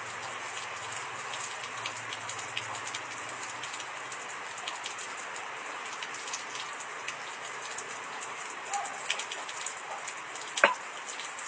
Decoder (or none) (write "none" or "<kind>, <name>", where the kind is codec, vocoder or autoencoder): none